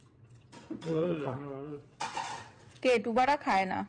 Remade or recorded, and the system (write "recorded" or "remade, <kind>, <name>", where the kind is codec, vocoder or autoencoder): remade, vocoder, WaveNeXt